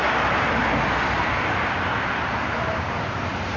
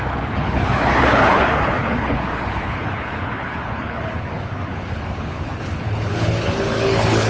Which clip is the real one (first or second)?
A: first